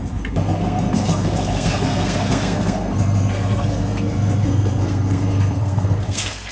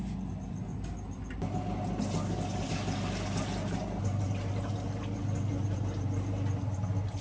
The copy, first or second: first